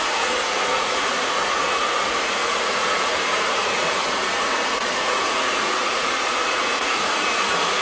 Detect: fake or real fake